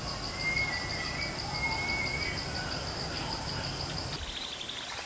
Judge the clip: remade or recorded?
recorded